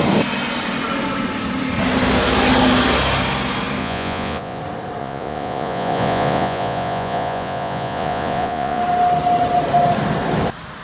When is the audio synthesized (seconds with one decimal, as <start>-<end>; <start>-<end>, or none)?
3.8-4.6; 5.0-8.8